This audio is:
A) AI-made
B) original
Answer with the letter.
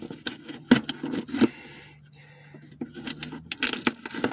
B